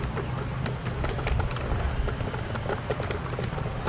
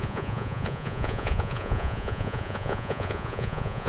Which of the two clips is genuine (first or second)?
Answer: first